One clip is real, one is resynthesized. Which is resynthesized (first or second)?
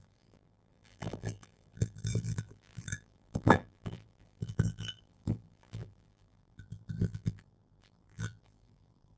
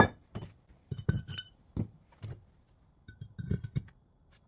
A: first